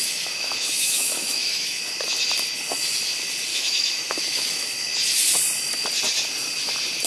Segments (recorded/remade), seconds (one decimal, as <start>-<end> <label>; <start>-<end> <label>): 0.0-1.8 remade; 1.8-3.5 recorded; 3.5-4.9 remade; 4.9-7.1 recorded